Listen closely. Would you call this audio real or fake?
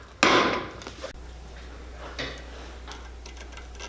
real